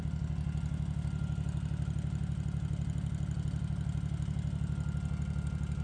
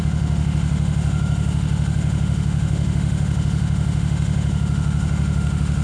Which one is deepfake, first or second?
second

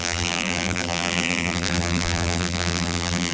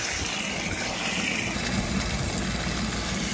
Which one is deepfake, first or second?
first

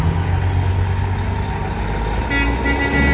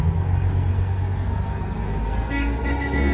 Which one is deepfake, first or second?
second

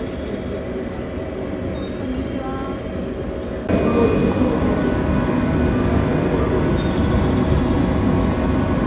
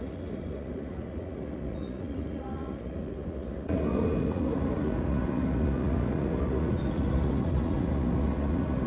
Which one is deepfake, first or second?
second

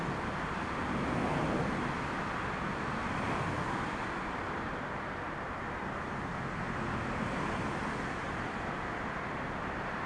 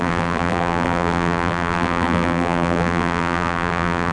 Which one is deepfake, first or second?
second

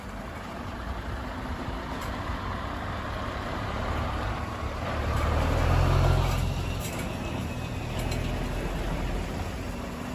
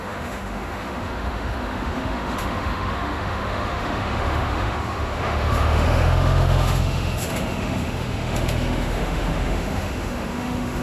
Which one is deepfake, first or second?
second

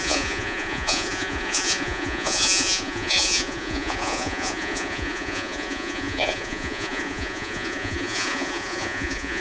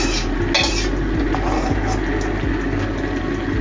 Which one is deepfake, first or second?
first